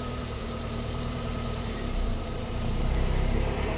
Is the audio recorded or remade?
remade